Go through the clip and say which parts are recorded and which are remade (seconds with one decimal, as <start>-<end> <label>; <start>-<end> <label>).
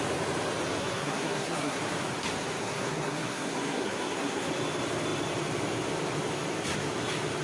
0.0-0.8 recorded; 0.8-1.8 remade; 1.8-2.6 recorded; 2.6-4.5 remade; 4.5-7.4 recorded